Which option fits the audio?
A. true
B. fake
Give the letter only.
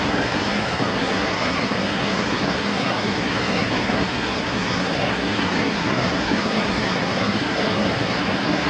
B